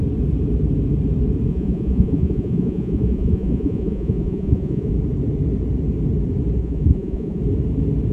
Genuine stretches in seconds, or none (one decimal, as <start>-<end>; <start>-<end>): 0.0-1.5; 4.9-6.6; 7.4-8.1